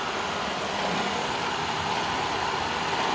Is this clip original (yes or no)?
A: no